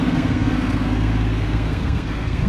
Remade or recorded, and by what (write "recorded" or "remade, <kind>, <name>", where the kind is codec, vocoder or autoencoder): remade, codec, SNAC